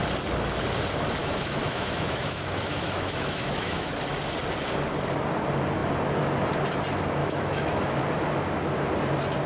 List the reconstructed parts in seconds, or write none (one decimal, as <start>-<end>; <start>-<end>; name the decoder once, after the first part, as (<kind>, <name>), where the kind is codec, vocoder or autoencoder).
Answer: 1.2-3.9 (autoencoder, DAC-VAE); 7.2-8.0